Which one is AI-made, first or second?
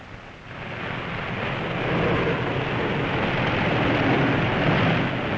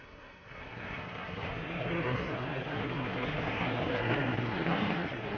second